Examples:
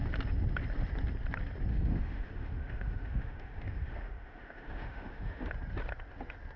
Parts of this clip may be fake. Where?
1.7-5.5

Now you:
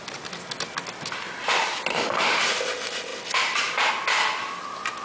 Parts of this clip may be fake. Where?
1.9-2.4

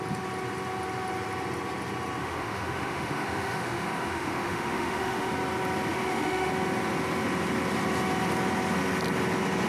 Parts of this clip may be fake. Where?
2.2-5.3; 5.9-6.5

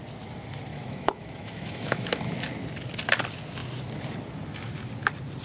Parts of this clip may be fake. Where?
0.7-2.2